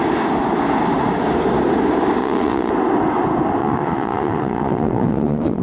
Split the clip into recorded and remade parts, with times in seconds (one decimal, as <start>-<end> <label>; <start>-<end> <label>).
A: 0.0-2.2 recorded; 2.2-2.7 remade; 2.7-3.6 recorded; 3.6-5.6 remade